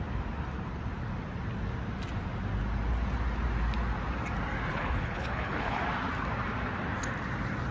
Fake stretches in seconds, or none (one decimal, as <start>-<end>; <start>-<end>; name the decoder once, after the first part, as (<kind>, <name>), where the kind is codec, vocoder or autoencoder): 4.7-5.8 (codec, HILCodec)